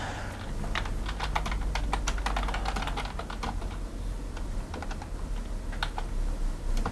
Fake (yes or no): no